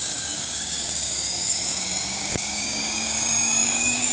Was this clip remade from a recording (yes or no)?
yes